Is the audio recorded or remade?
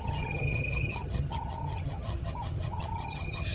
remade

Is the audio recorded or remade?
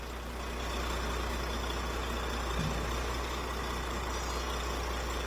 recorded